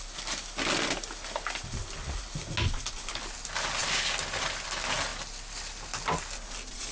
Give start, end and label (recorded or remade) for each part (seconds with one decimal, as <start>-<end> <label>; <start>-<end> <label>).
0.0-6.9 recorded